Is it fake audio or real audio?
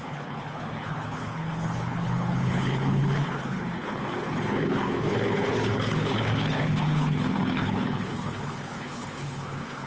fake